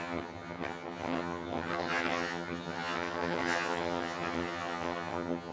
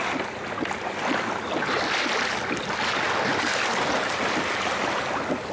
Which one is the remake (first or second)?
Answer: first